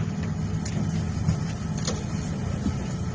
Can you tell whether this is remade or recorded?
recorded